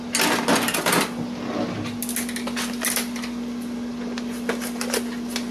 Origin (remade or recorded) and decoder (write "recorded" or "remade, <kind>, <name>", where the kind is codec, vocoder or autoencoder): recorded